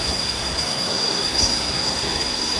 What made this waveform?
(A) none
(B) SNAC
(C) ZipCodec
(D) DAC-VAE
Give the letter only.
B